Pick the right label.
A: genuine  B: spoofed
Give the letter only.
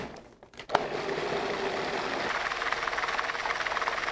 A